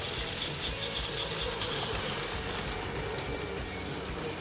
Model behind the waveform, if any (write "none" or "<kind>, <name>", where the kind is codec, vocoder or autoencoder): none